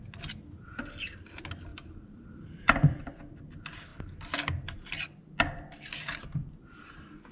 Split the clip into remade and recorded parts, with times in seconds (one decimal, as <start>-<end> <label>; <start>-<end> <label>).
0.0-1.7 recorded; 1.7-3.0 remade; 3.0-7.3 recorded